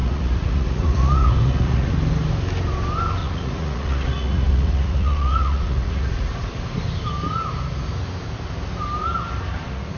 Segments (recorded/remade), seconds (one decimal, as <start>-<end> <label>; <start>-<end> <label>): 0.0-1.9 remade; 1.9-3.2 recorded; 3.2-6.6 remade; 6.6-10.0 recorded